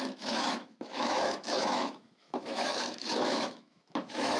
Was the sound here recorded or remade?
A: remade